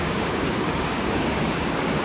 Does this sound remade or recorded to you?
remade